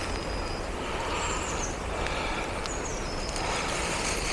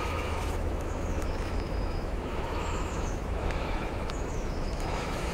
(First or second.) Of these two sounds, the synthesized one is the second